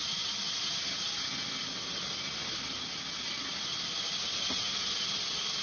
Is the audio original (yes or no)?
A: yes